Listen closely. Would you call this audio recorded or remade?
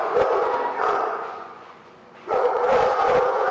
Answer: remade